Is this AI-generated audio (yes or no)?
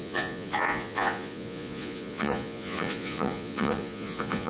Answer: yes